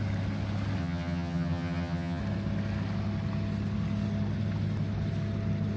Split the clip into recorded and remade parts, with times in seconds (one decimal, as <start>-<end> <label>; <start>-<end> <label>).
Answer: 0.0-0.8 recorded; 0.8-2.2 remade; 2.2-5.8 recorded